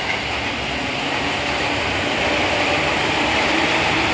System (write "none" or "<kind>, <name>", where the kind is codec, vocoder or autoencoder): none